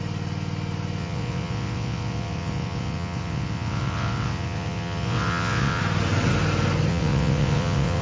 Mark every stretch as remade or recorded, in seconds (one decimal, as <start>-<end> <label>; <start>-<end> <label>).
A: 0.0-1.0 recorded; 1.0-5.8 remade; 5.8-6.9 recorded; 6.9-8.0 remade